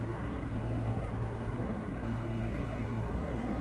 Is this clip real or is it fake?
fake